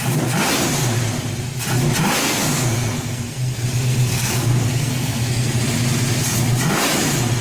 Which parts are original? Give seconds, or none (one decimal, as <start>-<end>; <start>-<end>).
0.0-2.2; 5.6-7.4